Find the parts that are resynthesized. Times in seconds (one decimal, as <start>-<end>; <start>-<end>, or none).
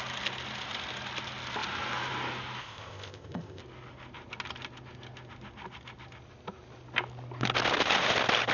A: 2.6-3.6